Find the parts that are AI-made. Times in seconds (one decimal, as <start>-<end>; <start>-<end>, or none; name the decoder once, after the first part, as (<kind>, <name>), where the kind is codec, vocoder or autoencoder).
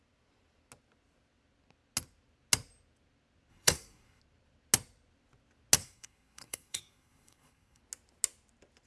3.5-4.2 (codec, SNAC); 5.8-7.8